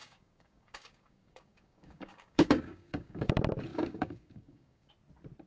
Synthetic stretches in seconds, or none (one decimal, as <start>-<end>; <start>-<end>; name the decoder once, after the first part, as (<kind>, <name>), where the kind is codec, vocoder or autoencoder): 0.0-3.3 (codec, DAC); 3.7-4.9